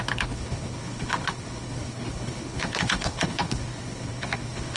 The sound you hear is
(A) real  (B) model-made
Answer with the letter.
B